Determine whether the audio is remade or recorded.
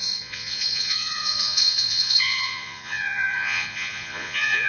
remade